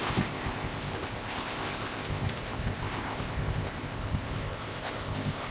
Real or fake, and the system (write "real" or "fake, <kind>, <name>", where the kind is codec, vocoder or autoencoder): fake, codec, ZipCodec